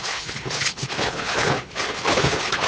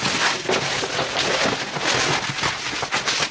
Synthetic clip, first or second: first